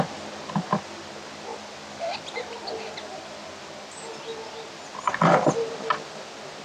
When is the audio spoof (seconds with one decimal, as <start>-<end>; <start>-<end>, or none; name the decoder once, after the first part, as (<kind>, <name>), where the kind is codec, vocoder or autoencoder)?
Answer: none